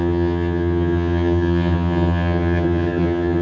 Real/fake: fake